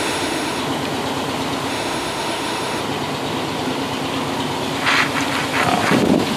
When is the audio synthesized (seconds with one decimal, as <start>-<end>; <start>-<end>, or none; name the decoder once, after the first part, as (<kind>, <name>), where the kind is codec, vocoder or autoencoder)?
0.0-0.6 (autoencoder, DAC-VAE); 1.7-2.8